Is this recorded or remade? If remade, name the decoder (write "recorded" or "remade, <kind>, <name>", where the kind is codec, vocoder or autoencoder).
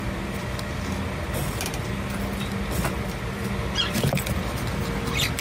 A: recorded